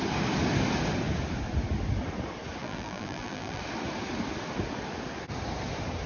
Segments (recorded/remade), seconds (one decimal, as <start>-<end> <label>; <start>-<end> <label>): 0.0-2.6 recorded; 2.6-3.6 remade; 3.6-6.1 recorded